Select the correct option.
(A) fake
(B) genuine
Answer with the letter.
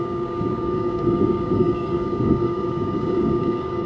A